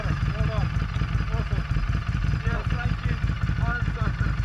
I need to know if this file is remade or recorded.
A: recorded